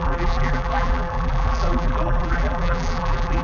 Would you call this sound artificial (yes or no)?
yes